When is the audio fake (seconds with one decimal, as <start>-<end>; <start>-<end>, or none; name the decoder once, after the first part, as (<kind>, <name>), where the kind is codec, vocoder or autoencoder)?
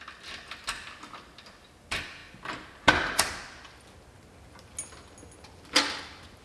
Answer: none